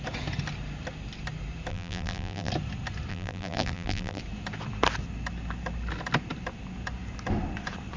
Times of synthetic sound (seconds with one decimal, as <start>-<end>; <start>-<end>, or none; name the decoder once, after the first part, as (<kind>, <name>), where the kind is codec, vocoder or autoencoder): 1.7-2.5 (vocoder, BigVGAN v2); 3.1-4.2